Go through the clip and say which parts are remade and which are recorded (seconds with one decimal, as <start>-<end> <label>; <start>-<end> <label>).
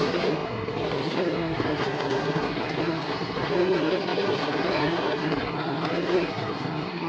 0.0-7.1 remade